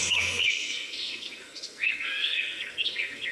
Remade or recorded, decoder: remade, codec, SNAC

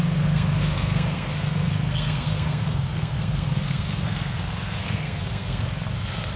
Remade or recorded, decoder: remade, codec, SNAC